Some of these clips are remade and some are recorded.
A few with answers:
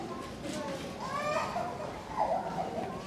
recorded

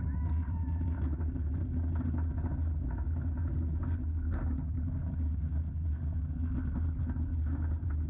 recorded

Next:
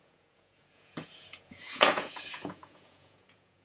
remade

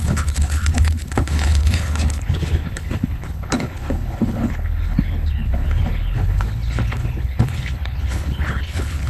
remade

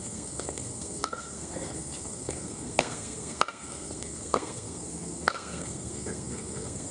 remade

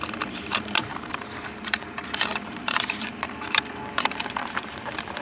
remade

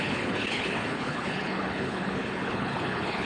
remade